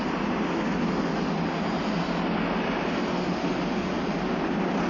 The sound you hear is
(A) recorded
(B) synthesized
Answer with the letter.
A